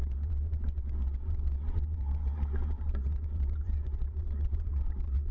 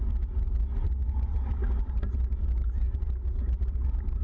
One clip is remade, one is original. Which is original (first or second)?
second